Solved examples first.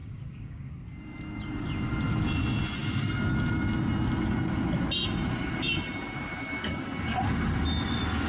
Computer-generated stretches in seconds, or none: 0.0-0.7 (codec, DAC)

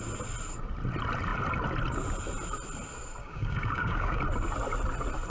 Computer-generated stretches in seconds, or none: 3.2-4.2 (codec, DAC)

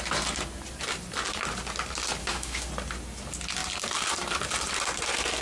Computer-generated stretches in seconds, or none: 2.2-2.7 (autoencoder, DAC-VAE)

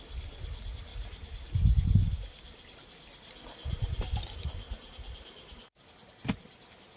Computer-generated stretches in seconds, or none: 0.9-1.5 (vocoder, BigVGAN v2); 2.0-2.7; 3.5-5.5